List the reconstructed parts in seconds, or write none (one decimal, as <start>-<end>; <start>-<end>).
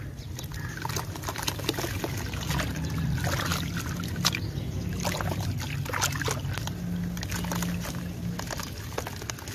none